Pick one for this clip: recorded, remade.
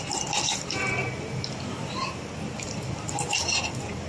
recorded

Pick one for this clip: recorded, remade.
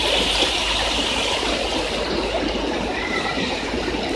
remade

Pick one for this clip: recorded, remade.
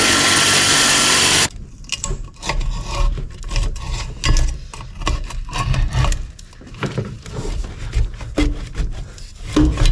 recorded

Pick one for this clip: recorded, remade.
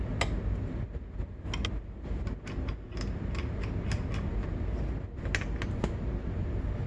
recorded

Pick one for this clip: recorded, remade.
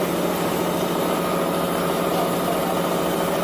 recorded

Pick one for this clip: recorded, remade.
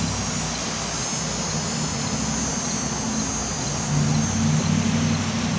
recorded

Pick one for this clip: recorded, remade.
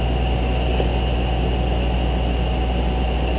recorded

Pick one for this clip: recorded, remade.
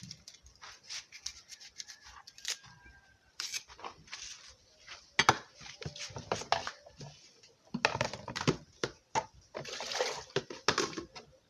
recorded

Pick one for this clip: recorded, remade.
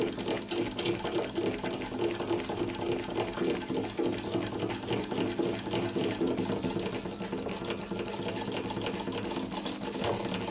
recorded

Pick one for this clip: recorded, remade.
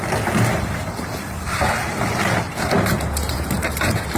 remade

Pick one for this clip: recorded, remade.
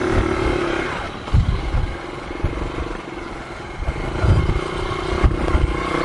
recorded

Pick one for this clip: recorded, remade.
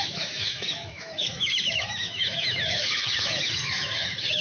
remade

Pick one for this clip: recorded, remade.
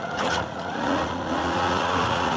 remade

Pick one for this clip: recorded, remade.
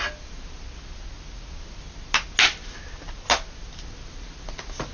recorded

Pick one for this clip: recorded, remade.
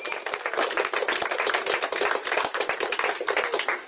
recorded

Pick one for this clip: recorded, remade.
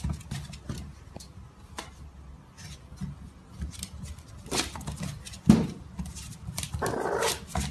recorded